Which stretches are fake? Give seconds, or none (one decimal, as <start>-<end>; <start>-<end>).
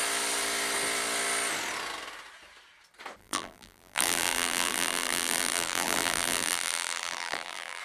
3.2-7.8